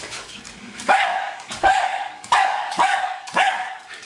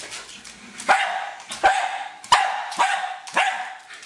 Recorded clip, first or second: second